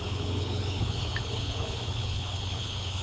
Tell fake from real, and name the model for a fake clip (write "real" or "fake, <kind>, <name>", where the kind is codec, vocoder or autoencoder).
fake, codec, HILCodec